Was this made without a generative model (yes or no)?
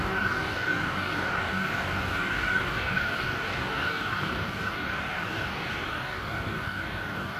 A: no